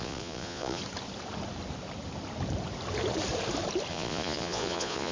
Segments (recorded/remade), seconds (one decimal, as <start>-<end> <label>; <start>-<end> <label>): 0.0-0.8 remade; 0.8-3.9 recorded; 3.9-5.1 remade